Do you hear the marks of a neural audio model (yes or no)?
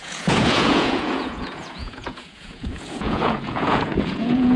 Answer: yes